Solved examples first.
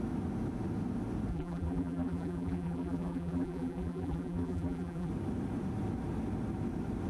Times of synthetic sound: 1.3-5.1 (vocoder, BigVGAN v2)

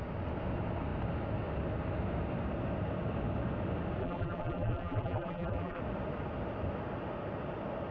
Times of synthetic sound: 4.0-5.8 (vocoder, BigVGAN v2)

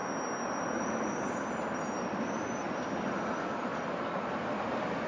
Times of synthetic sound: 0.0-3.1 (vocoder, BigVGAN v2); 3.7-5.1